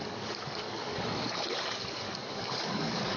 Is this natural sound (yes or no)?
no